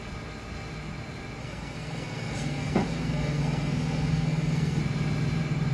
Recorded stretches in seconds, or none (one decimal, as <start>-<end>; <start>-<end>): 0.0-1.4; 4.8-5.7